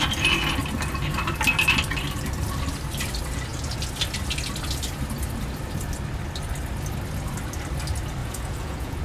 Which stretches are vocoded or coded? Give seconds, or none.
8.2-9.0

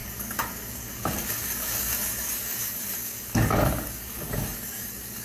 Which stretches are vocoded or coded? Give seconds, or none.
0.0-5.2

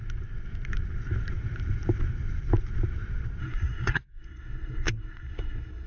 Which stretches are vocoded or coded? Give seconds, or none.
3.4-5.9

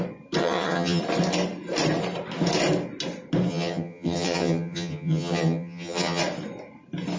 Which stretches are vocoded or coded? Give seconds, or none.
0.4-1.0; 3.5-6.2

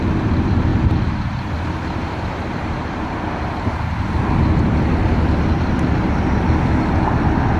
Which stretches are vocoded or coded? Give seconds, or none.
0.7-4.4; 5.5-6.4